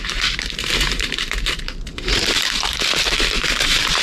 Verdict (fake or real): fake